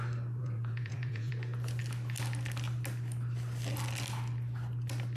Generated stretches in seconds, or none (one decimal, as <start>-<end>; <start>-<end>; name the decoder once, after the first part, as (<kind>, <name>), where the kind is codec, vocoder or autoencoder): 0.4-1.3 (vocoder, Vocos)